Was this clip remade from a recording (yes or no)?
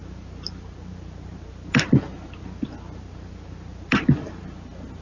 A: no